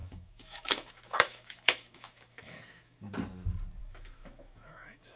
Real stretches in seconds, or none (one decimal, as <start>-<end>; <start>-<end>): 3.1-3.8